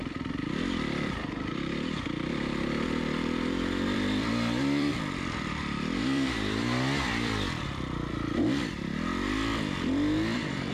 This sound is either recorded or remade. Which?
remade